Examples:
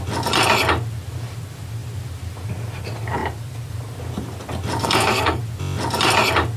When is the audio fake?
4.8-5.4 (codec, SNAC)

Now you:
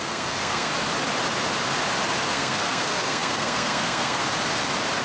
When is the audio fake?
0.0-0.7 (codec, SNAC); 2.3-4.2

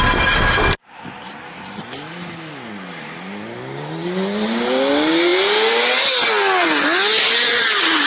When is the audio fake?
none

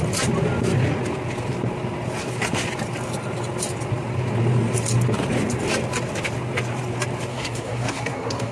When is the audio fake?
7.3-8.5 (codec, SNAC)

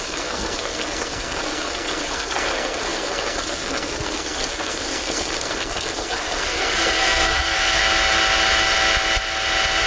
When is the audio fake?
0.0-7.8 (codec, SNAC)

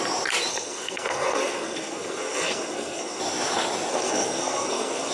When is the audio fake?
0.5-3.2 (codec, SNAC); 3.9-5.1